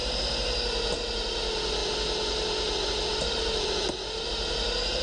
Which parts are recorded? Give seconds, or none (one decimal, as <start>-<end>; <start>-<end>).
0.0-5.0